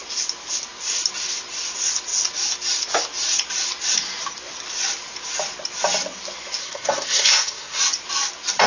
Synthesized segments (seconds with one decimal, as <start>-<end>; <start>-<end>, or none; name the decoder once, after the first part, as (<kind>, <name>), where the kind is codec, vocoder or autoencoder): 6.6-7.8 (codec, SNAC)